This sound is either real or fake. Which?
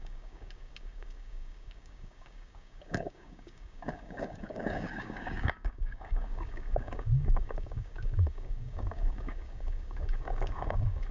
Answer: fake